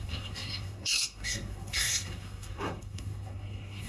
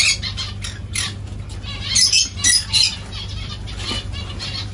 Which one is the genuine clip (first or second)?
second